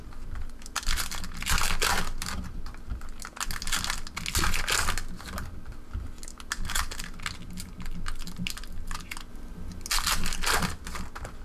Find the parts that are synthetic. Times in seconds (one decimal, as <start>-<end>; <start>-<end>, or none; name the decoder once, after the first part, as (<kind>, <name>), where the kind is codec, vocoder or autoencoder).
none